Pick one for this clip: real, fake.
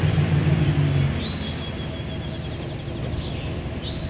real